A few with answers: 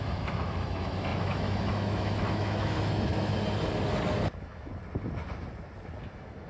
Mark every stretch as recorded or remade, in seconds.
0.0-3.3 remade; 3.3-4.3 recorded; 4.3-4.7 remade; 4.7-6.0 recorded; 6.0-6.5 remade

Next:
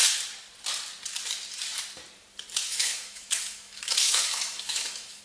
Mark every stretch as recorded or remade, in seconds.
0.0-2.6 recorded; 2.6-5.2 remade

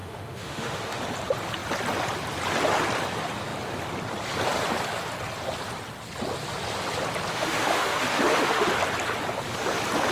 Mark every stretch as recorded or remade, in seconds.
0.0-1.0 remade; 1.0-7.3 recorded; 7.3-8.7 remade; 8.7-10.1 recorded

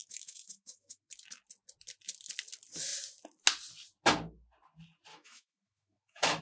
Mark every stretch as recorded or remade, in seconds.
0.0-1.1 remade; 1.1-5.1 recorded; 5.1-6.4 remade

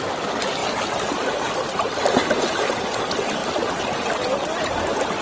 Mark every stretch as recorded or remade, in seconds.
0.0-5.2 recorded

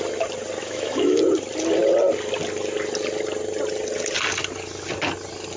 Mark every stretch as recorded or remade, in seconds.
0.0-0.6 recorded; 0.6-1.2 remade; 1.2-5.6 recorded

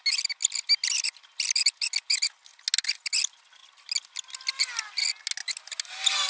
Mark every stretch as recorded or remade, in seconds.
0.0-6.3 recorded

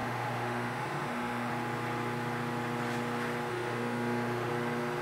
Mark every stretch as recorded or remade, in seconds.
0.0-1.5 remade; 1.5-3.5 recorded; 3.5-4.5 remade; 4.5-5.0 recorded